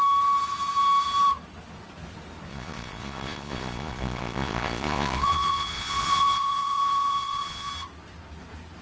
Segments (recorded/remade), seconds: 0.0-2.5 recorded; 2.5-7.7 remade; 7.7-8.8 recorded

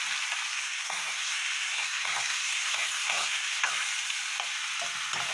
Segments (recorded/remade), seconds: 0.0-0.5 recorded; 0.5-3.7 remade; 3.7-5.3 recorded

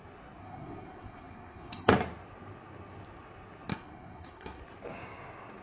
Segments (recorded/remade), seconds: 0.0-0.4 recorded; 0.4-1.9 remade; 1.9-3.7 recorded; 3.7-4.6 remade; 4.6-5.6 recorded

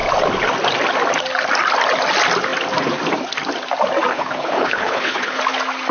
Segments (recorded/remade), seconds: 0.0-4.1 recorded; 4.1-5.4 remade; 5.4-5.9 recorded

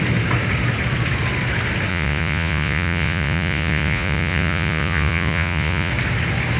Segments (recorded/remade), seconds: 0.0-1.9 recorded; 1.9-5.9 remade; 5.9-6.6 recorded

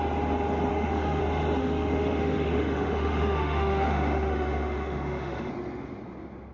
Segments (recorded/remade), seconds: 0.0-0.7 recorded; 0.7-1.2 remade; 1.2-1.6 recorded; 1.6-5.5 remade; 5.5-6.5 recorded

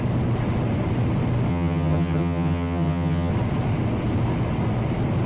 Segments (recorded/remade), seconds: 0.0-1.5 recorded; 1.5-3.3 remade; 3.3-5.3 recorded